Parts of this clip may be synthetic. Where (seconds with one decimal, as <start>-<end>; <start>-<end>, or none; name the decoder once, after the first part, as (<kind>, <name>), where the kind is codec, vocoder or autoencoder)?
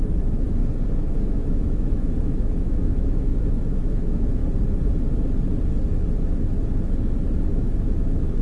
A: 0.0-0.6 (autoencoder, DAC-VAE); 1.1-4.4; 7.5-8.4